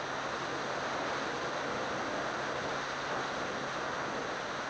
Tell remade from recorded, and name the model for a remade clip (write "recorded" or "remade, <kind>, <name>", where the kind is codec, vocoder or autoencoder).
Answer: recorded